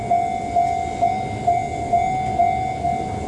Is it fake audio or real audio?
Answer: real